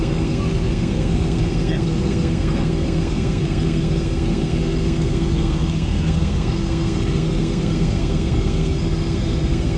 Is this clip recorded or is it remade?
remade